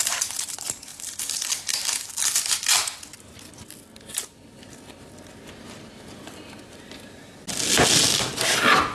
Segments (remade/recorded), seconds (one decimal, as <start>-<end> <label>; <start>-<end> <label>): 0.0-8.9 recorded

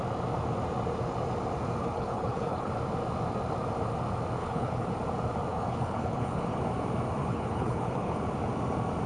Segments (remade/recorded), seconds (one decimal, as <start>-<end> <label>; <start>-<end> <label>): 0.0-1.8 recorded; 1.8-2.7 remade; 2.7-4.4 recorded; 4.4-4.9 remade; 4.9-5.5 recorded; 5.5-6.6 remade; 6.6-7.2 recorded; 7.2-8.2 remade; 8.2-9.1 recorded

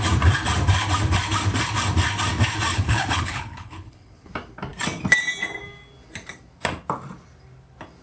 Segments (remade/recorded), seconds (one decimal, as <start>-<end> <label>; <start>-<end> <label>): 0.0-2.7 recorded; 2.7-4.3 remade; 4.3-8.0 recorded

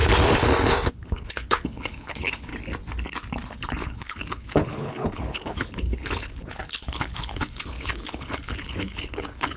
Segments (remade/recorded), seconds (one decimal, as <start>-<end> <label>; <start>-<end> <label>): 0.0-0.9 recorded; 0.9-2.5 remade; 2.5-3.5 recorded; 3.5-9.6 remade